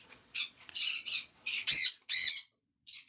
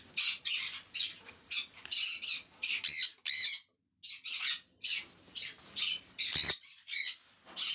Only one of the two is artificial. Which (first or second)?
first